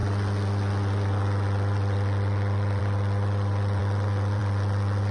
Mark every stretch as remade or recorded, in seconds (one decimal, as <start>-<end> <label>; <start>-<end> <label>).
0.0-2.8 recorded; 2.8-3.8 remade; 3.8-4.4 recorded; 4.4-5.1 remade